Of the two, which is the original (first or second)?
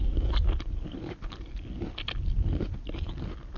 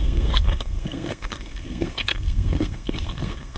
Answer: first